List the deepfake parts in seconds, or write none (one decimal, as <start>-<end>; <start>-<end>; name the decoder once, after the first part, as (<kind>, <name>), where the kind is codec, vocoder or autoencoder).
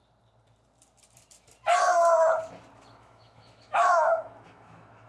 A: 3.0-5.1 (autoencoder, DAC-VAE)